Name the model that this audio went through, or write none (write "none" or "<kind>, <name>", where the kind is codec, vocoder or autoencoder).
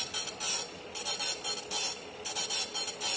none